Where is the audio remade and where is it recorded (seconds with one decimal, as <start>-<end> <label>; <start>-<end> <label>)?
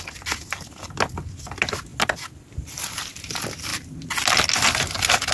0.0-5.3 recorded